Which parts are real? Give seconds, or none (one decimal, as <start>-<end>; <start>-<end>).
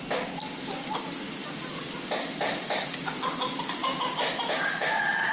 3.8-4.7